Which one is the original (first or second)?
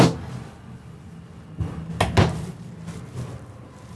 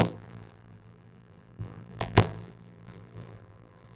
first